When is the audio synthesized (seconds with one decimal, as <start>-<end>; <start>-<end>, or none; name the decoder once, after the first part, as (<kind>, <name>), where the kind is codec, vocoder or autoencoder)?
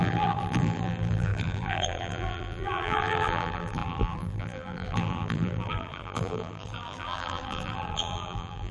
0.0-8.7 (vocoder, BigVGAN v2)